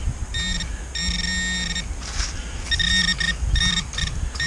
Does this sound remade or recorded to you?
recorded